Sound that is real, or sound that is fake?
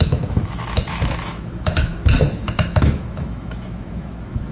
fake